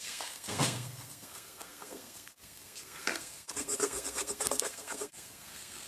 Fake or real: fake